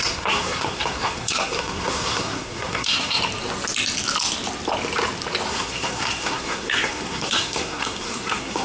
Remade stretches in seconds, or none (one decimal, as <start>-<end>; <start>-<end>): 0.0-3.2; 5.5-8.6